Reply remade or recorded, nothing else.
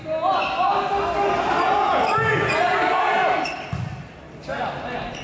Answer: recorded